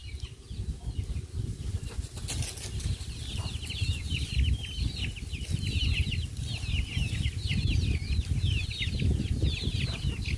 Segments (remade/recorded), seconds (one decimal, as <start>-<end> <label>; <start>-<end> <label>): 0.0-10.4 recorded